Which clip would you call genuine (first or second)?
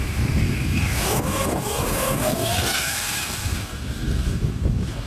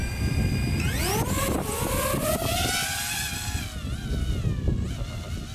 second